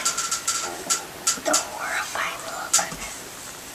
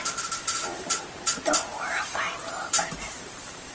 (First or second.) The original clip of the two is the first